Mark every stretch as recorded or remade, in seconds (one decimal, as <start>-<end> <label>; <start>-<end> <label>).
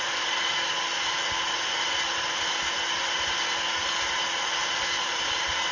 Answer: 0.0-4.6 recorded; 4.6-5.7 remade